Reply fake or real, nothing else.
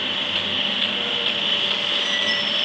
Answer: real